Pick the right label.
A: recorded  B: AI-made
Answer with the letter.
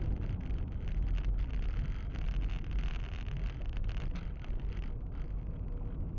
B